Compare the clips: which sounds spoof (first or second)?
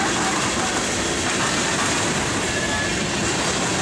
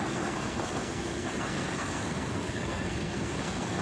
second